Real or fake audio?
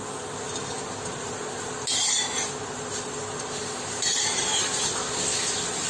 real